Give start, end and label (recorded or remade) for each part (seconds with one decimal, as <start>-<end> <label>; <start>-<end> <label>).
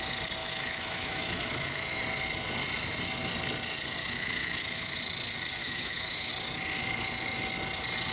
0.0-0.4 recorded; 0.4-2.0 remade; 2.0-4.0 recorded; 4.0-5.0 remade; 5.0-5.6 recorded; 5.6-6.3 remade; 6.3-8.1 recorded